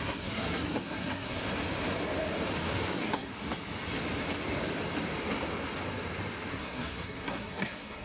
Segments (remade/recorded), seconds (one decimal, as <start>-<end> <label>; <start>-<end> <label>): 0.0-1.4 remade; 1.4-2.9 recorded; 2.9-3.3 remade; 3.3-6.5 recorded; 6.5-8.0 remade